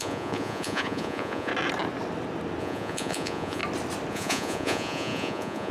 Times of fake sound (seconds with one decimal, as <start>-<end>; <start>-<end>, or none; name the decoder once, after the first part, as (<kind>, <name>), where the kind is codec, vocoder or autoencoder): 0.0-1.5 (vocoder, Vocos); 2.6-3.6; 4.1-5.7